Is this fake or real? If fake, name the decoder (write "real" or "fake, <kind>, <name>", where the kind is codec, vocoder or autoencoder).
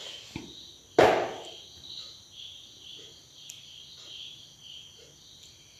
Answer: real